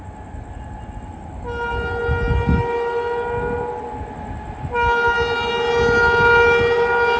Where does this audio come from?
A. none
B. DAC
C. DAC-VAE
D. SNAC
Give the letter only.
A